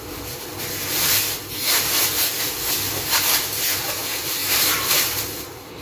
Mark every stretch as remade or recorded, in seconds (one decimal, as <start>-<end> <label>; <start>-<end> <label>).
0.0-0.5 remade; 0.5-4.0 recorded; 4.0-5.8 remade